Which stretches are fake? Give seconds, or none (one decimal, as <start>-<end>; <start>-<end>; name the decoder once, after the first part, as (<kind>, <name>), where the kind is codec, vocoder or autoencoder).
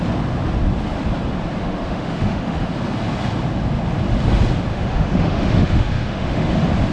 1.6-2.7 (autoencoder, DAC-VAE); 4.7-6.5